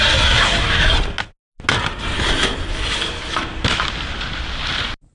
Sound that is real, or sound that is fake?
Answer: real